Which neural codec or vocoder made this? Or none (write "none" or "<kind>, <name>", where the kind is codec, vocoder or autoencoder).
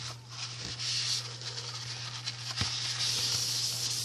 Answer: none